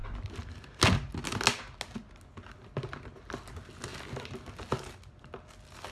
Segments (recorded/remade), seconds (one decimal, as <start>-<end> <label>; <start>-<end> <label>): 0.0-5.9 recorded